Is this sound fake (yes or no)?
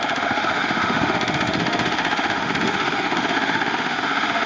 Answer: yes